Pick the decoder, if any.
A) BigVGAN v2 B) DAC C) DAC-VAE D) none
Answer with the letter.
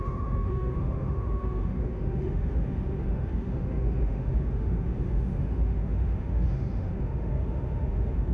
C